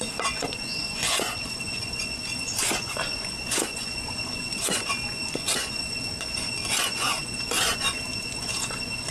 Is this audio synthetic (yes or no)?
yes